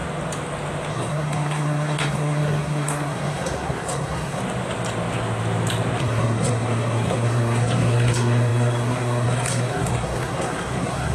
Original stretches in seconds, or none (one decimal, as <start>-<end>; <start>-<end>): 0.0-0.9; 4.4-6.0